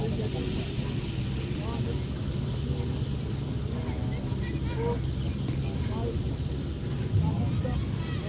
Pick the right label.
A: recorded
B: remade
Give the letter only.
A